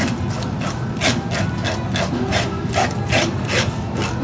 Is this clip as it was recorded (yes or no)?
yes